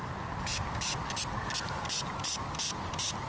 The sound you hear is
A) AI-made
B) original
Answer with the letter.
B